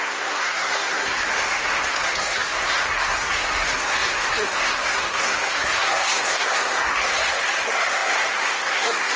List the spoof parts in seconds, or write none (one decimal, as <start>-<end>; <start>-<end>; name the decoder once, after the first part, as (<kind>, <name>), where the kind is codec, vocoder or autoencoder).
0.0-9.2 (codec, SNAC)